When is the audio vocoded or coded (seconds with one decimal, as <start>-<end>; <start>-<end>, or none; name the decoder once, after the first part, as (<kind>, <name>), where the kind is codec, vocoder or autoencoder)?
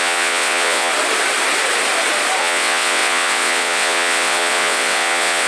0.0-0.9 (vocoder, WaveNeXt); 2.4-5.5